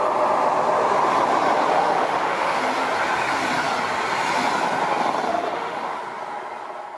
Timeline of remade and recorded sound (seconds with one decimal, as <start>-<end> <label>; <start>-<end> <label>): 0.0-1.7 recorded; 1.7-2.6 remade; 2.6-5.3 recorded; 5.3-6.0 remade; 6.0-7.0 recorded